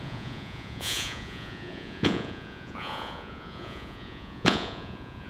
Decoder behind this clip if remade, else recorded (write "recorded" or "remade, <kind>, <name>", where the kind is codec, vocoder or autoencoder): remade, vocoder, Vocos